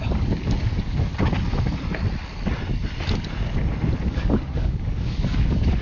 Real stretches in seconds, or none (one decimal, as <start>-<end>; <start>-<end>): 1.1-4.0